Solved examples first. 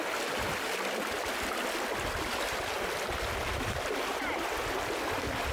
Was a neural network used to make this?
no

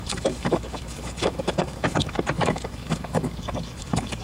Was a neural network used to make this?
yes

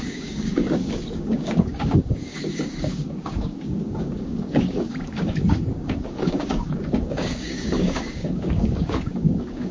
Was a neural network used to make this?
yes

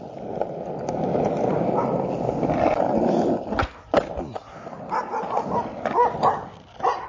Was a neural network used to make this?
no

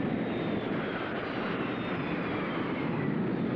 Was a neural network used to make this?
no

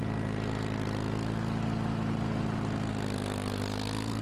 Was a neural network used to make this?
no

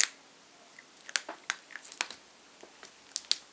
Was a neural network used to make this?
no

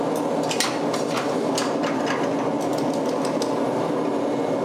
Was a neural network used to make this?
no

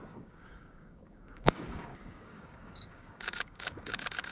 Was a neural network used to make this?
yes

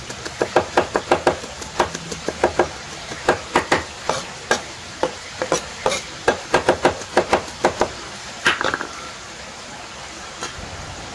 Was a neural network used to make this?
no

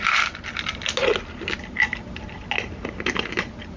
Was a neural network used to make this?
no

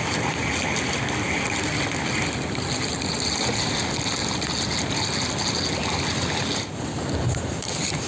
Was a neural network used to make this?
no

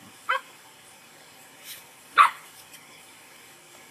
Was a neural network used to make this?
yes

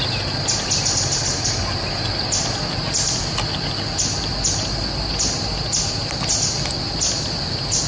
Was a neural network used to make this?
no